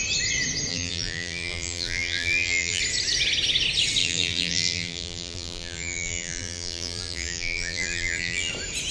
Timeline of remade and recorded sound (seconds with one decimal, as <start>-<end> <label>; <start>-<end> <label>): 0.0-0.7 recorded; 0.7-2.8 remade; 2.8-4.0 recorded; 4.0-8.5 remade; 8.5-8.9 recorded